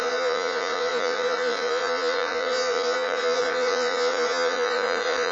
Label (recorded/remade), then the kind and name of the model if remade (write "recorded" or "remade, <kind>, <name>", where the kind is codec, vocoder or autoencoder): remade, vocoder, Vocos